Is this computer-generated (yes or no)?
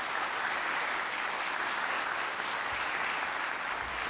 no